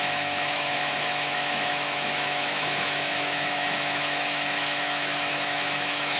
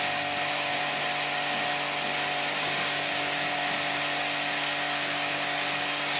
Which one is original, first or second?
second